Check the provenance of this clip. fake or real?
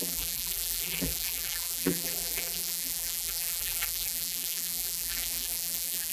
fake